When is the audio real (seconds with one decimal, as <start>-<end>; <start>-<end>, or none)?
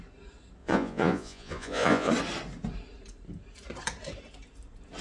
0.0-0.6; 2.1-5.0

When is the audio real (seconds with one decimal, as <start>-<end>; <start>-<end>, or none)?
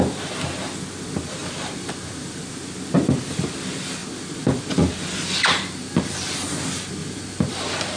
0.0-1.4; 2.4-7.0; 7.5-8.0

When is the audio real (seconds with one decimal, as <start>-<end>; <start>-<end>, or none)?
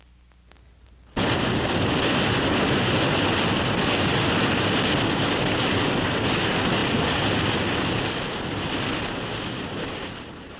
0.0-10.6